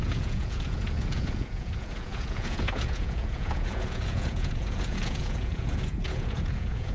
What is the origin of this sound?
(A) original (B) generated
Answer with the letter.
B